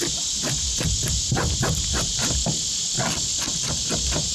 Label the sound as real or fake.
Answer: real